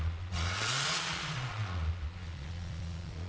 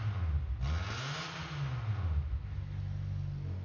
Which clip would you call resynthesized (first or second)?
first